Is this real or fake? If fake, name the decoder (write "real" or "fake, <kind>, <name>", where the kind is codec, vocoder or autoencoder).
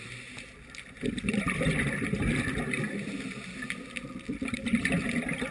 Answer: real